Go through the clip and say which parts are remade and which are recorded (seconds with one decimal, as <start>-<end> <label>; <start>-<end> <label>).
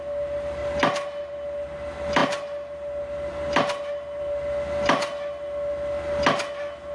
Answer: 0.0-6.9 recorded